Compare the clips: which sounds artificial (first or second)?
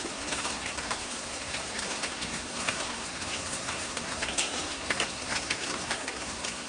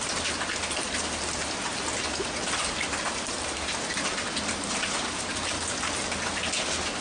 first